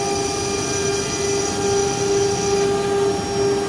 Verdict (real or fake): real